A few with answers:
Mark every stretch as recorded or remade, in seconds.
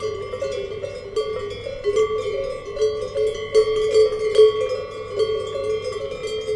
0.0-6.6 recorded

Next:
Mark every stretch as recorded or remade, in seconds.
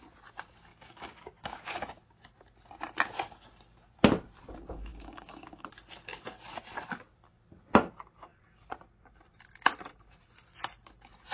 0.0-0.7 recorded; 0.7-2.0 remade; 2.0-4.9 recorded; 4.9-5.6 remade; 5.6-11.3 recorded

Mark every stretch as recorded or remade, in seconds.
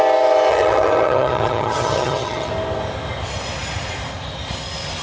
0.0-0.5 recorded; 0.5-2.5 remade; 2.5-5.0 recorded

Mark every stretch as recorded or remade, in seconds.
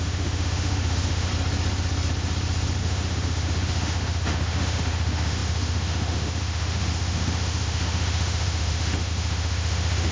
0.0-1.3 remade; 1.3-2.8 recorded; 2.8-10.1 remade